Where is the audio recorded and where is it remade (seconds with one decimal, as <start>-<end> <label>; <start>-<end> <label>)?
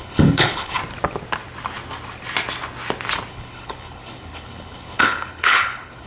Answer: 0.0-0.8 remade; 0.8-3.3 recorded; 3.3-6.1 remade